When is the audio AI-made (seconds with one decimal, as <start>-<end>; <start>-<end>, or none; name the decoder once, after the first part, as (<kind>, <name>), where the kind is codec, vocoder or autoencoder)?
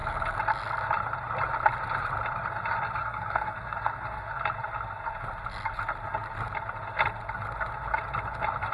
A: 3.0-4.3 (codec, SNAC)